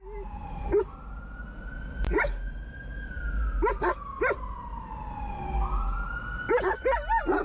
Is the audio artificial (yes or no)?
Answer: no